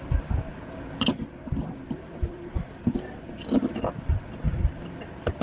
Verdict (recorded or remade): remade